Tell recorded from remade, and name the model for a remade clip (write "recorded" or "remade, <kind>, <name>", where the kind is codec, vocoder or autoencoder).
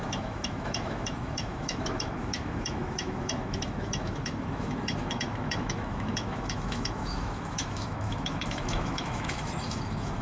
remade, autoencoder, DAC-VAE